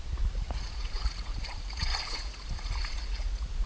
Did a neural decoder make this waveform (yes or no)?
yes